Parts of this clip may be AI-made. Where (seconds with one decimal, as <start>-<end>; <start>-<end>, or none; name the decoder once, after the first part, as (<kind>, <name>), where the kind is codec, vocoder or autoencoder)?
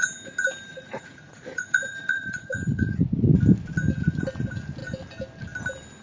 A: 0.7-3.0 (vocoder, Vocos)